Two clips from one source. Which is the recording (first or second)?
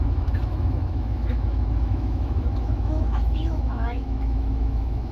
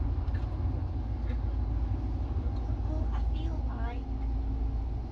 second